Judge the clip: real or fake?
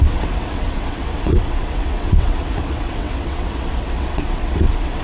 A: fake